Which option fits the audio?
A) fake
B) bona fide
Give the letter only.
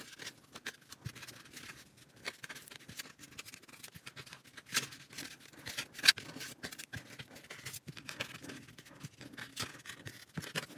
B